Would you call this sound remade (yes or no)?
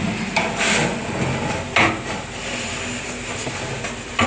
no